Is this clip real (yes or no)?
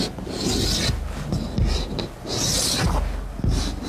yes